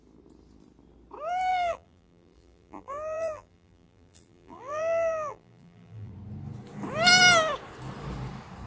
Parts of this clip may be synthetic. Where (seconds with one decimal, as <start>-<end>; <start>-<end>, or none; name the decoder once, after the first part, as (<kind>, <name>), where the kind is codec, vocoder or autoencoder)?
1.5-6.1 (vocoder, BigVGAN v2)

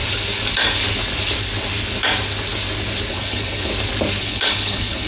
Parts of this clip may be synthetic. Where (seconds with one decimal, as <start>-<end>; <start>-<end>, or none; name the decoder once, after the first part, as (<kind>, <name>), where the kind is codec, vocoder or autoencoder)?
3.1-3.7 (codec, HILCodec); 4.2-5.1

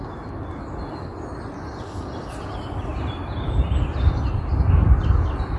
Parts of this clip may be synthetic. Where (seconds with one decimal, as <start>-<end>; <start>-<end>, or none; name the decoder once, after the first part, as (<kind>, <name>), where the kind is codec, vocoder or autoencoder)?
2.9-4.5 (vocoder, BigVGAN v2)

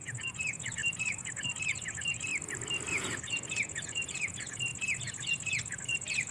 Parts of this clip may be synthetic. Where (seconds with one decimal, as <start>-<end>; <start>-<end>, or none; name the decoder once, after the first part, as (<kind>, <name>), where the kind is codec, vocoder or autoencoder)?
0.0-2.3 (vocoder, Vocos); 2.9-6.3

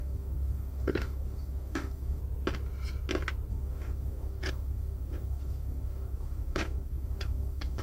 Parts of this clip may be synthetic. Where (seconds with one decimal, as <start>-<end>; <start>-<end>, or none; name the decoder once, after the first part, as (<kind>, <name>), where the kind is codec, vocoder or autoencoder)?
0.0-2.2 (codec, DAC); 3.5-7.8